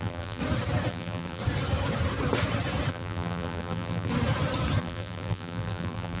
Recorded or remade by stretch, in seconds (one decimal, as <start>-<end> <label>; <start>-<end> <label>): 0.0-0.4 remade; 0.4-0.9 recorded; 0.9-1.4 remade; 1.4-2.9 recorded; 2.9-4.1 remade; 4.1-4.8 recorded; 4.8-6.2 remade